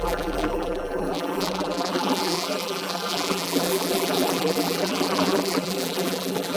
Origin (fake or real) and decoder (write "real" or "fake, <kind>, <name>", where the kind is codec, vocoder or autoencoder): fake, vocoder, BigVGAN v2